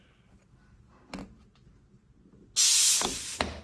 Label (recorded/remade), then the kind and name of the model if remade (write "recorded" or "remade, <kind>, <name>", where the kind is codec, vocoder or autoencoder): recorded